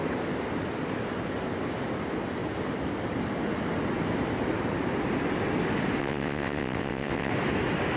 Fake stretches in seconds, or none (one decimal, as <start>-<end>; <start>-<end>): 6.0-7.3